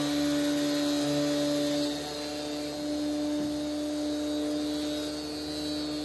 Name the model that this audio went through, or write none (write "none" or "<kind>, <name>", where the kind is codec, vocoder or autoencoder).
none